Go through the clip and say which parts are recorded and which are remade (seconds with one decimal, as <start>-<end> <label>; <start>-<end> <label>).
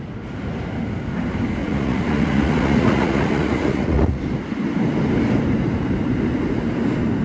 0.0-1.6 recorded; 1.6-4.2 remade; 4.2-7.2 recorded